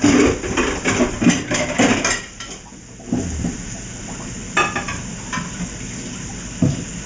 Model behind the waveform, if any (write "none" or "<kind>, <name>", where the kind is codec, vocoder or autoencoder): none